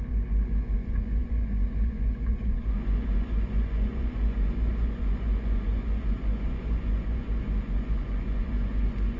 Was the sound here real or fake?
fake